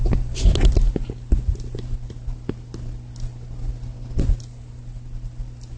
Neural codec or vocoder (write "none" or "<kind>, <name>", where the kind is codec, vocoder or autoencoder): none